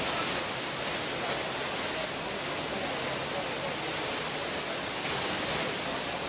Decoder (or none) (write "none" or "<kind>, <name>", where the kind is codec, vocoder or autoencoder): none